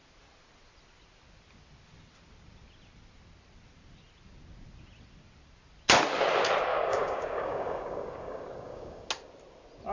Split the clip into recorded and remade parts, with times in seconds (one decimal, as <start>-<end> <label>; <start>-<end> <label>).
0.0-6.7 recorded; 6.7-9.1 remade; 9.1-9.9 recorded